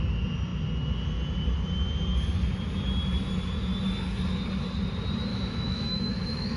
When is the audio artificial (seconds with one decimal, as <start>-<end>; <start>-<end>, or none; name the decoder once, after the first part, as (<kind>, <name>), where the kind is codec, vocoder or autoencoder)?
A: 5.3-6.6 (autoencoder, DAC-VAE)